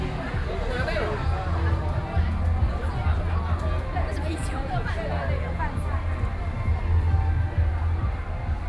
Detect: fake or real real